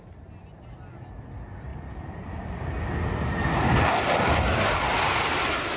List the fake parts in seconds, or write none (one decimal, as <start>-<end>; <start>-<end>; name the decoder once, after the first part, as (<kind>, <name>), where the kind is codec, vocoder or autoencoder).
none